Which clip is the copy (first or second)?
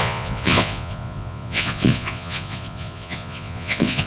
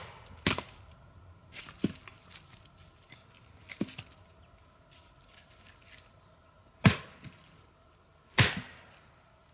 first